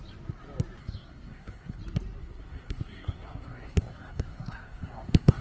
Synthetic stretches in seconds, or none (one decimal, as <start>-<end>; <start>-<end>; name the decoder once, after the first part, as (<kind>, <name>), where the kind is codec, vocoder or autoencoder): 0.8-1.8 (codec, SNAC); 2.2-5.4